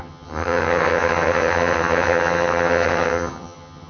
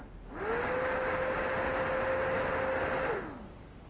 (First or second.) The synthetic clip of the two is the first